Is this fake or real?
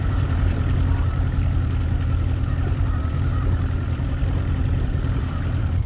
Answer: real